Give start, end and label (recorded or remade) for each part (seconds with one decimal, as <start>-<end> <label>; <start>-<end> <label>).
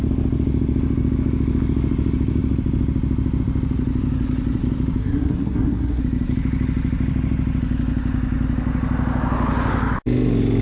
0.0-5.0 recorded; 5.0-6.0 remade; 6.0-10.6 recorded